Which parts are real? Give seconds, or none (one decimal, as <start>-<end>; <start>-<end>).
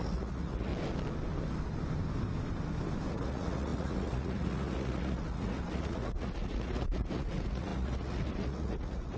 0.7-3.1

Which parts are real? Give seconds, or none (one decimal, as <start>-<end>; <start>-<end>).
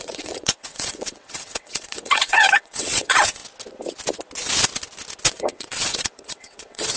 3.4-5.3